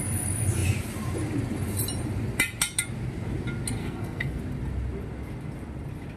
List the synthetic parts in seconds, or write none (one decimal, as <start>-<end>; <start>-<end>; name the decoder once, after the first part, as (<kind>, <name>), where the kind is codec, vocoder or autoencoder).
3.8-4.4 (codec, SNAC)